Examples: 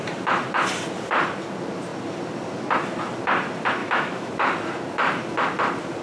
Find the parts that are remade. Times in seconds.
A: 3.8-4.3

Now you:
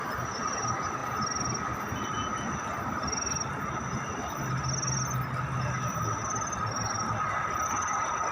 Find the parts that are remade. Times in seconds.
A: none

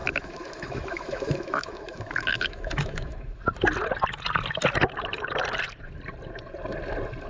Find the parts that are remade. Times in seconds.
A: 0.0-3.4

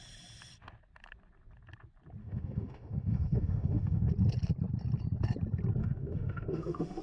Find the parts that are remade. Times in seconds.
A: 2.2-4.1; 5.8-7.0

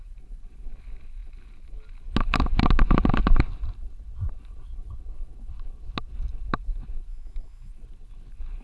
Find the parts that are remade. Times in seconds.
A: 7.1-7.7

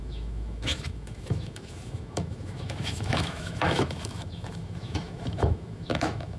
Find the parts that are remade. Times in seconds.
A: 0.0-6.4